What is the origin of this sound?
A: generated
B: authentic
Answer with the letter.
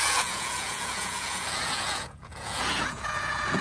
A